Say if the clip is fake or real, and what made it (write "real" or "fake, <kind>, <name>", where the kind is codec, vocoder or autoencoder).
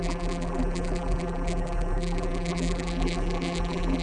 fake, vocoder, BigVGAN v2